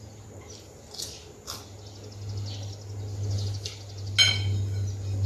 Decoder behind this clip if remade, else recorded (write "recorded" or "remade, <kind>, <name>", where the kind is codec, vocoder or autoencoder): recorded